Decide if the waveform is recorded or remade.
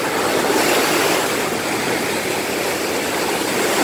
recorded